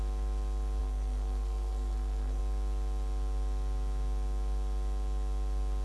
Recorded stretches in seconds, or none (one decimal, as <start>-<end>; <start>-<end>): 0.0-0.8; 2.4-5.8